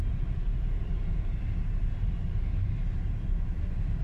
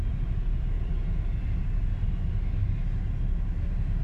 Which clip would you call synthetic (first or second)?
first